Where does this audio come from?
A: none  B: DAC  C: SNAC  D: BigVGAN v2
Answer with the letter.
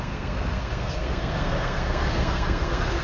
C